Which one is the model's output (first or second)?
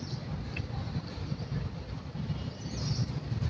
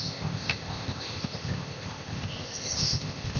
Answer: second